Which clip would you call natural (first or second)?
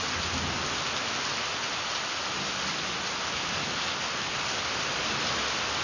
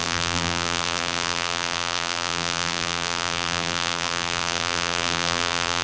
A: first